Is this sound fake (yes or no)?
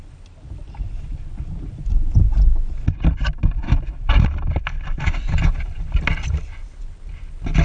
no